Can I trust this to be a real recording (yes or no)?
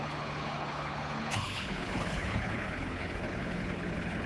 no